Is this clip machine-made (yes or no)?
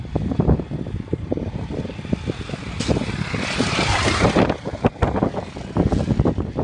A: no